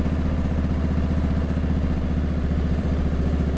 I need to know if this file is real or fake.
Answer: real